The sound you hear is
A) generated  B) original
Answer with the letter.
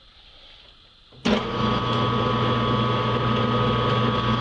B